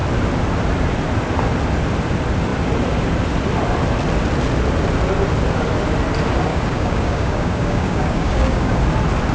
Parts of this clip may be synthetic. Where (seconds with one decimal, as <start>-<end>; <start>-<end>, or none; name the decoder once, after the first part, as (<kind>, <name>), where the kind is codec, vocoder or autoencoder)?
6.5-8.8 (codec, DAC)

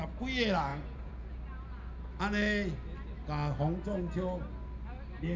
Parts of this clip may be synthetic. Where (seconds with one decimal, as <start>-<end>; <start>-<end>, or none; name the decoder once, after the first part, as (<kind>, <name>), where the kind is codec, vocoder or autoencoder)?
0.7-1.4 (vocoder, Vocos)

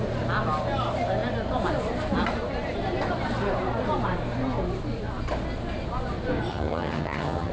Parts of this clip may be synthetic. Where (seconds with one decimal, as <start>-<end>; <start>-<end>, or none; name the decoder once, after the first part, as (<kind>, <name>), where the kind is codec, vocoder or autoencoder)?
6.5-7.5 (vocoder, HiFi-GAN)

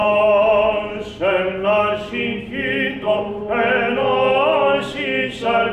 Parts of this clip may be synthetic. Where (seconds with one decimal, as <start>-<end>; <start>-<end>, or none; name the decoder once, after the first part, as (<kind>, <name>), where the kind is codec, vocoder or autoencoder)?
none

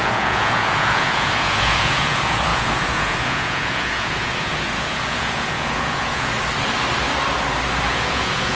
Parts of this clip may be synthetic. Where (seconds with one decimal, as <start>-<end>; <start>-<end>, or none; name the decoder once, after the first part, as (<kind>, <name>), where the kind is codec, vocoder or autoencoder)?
0.0-6.3 (vocoder, Vocos); 7.9-8.5

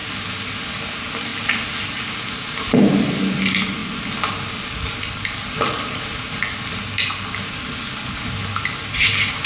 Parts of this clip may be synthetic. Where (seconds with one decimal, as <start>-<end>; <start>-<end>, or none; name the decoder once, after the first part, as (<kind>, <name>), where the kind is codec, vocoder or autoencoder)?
none

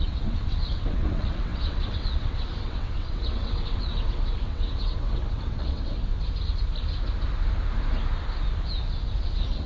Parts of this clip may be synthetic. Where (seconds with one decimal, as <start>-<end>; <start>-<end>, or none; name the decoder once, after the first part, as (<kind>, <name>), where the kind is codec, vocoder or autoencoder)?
0.0-6.1 (vocoder, WaveNeXt); 9.2-9.7